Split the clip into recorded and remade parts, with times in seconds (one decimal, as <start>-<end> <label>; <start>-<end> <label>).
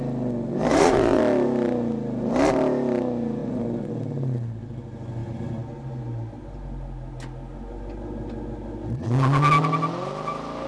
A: 0.0-0.7 recorded; 0.7-1.2 remade; 1.2-3.4 recorded; 3.4-3.9 remade; 3.9-10.7 recorded